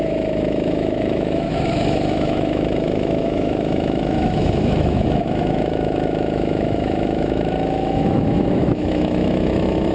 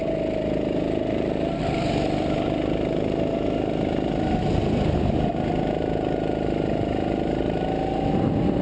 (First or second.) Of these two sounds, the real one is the second